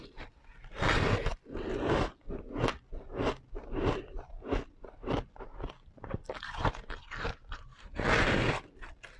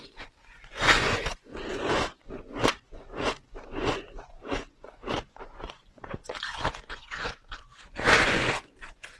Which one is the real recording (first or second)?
first